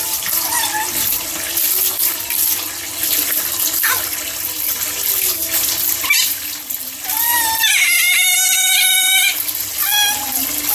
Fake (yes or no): no